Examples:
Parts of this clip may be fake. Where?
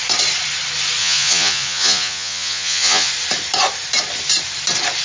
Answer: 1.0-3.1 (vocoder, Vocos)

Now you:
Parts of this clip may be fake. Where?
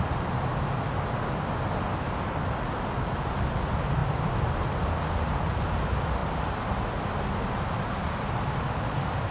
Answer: none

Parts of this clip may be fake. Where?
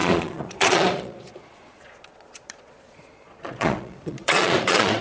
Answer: 0.0-5.0 (vocoder, Vocos)